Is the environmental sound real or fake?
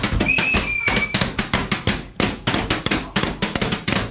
real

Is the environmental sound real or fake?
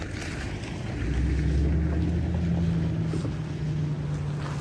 real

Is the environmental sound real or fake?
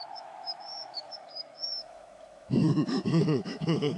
fake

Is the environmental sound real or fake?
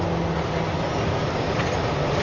real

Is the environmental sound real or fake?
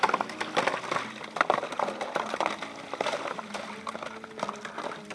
real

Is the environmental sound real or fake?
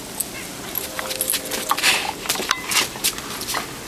real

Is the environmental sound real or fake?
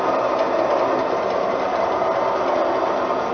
real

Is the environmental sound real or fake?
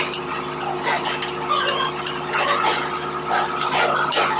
real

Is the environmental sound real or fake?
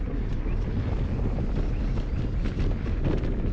real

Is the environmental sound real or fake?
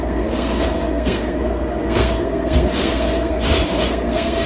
fake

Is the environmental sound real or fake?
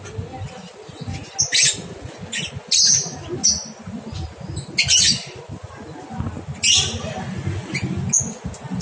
real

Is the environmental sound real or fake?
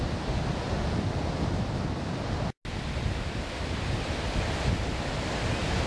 real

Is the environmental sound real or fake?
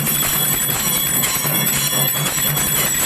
real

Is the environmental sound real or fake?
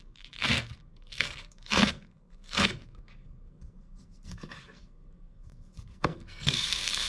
fake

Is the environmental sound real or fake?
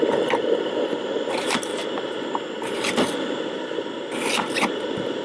real